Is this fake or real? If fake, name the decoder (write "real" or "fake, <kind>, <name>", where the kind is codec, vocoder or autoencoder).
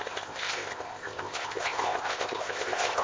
fake, codec, ZipCodec